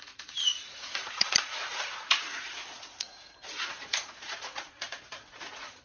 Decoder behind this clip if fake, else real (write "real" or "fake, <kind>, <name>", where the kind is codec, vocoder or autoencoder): fake, vocoder, Vocos